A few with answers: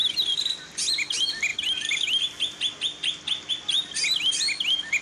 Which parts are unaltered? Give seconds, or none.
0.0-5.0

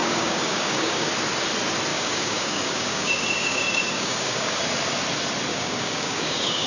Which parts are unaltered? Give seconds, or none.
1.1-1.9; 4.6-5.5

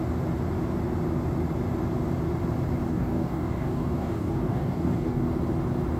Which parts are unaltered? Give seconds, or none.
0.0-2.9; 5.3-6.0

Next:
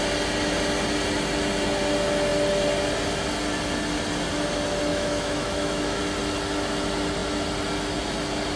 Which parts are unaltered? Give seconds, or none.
0.0-4.9; 6.0-8.6